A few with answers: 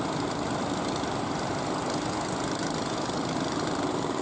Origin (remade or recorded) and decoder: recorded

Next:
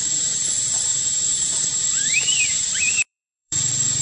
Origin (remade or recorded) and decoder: remade, vocoder, BigVGAN v2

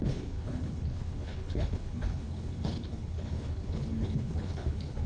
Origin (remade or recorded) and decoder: remade, codec, HILCodec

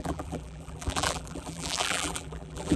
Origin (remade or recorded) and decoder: remade, vocoder, BigVGAN v2